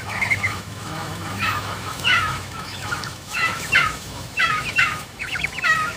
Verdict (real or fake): fake